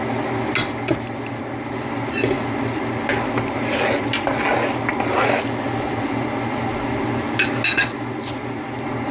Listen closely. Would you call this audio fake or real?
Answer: real